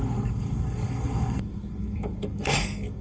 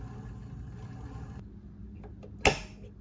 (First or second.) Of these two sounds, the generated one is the first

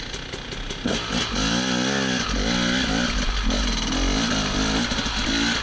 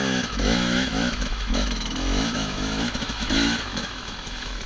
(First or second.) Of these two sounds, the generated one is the second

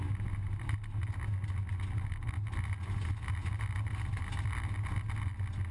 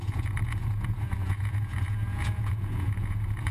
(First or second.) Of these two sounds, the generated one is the second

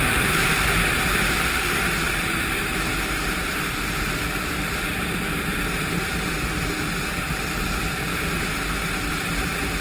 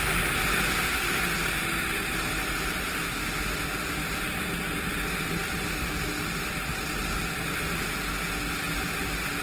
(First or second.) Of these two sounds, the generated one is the first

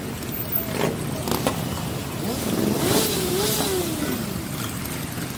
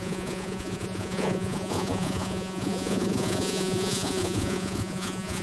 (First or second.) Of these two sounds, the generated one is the second